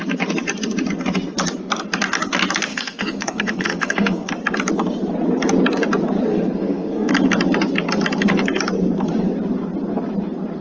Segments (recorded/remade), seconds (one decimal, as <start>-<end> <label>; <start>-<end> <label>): 0.0-2.7 recorded; 2.7-4.3 remade; 4.3-6.3 recorded; 6.3-7.1 remade; 7.1-10.6 recorded